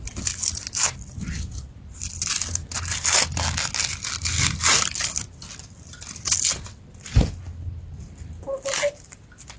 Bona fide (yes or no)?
yes